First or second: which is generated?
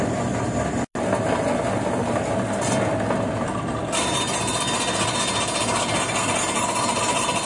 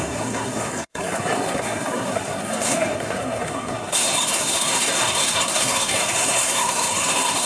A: second